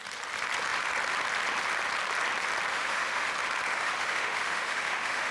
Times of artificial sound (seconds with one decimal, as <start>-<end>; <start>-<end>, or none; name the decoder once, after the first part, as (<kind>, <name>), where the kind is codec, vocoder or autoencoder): 2.7-3.3 (autoencoder, DAC-VAE); 3.7-5.3